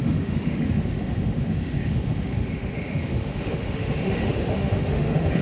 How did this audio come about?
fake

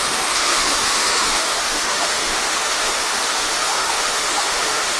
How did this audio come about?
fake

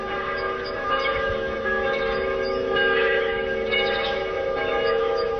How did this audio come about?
fake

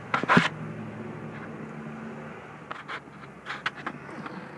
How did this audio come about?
real